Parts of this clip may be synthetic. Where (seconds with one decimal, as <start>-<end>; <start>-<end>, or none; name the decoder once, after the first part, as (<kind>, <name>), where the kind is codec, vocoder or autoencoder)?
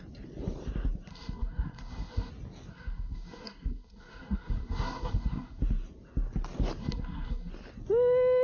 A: 1.1-2.3 (codec, SNAC); 2.7-5.6; 6.8-7.5